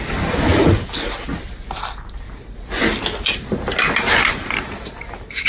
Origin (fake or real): real